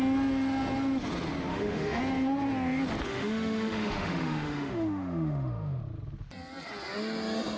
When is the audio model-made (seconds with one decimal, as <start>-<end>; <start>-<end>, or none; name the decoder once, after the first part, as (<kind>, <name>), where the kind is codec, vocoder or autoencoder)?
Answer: 1.5-2.0 (autoencoder, DAC-VAE); 3.1-5.8